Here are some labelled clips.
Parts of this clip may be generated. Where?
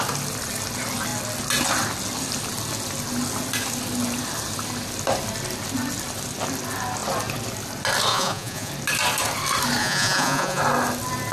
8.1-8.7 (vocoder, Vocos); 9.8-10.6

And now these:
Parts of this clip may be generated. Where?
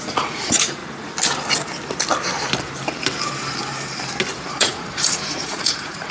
0.0-0.8 (vocoder, Vocos); 4.5-6.1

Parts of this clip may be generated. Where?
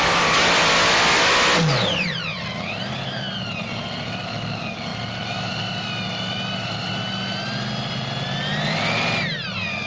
none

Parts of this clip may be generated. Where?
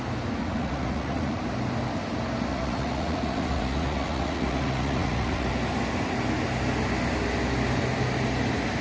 0.4-1.4 (vocoder, Vocos); 2.5-5.5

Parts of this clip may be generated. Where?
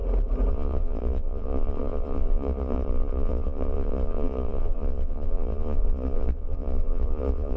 0.5-7.6 (vocoder, Vocos)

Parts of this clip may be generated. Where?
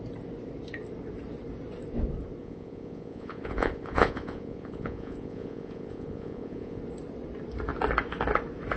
2.4-6.8 (vocoder, Vocos)